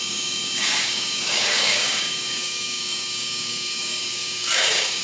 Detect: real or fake fake